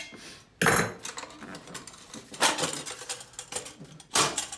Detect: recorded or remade recorded